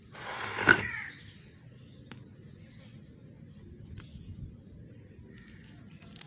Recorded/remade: recorded